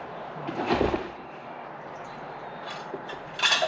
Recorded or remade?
remade